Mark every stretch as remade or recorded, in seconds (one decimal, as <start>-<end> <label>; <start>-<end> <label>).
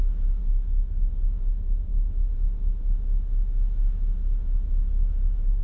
0.0-0.4 recorded; 0.4-1.1 remade; 1.1-5.6 recorded